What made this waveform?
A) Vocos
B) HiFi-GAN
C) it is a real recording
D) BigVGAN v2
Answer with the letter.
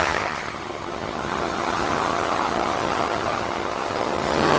B